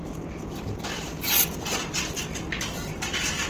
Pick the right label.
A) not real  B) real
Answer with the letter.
B